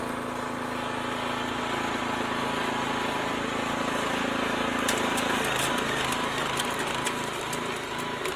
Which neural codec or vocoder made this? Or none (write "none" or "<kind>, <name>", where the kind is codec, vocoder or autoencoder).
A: none